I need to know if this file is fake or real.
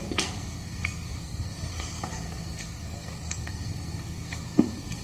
fake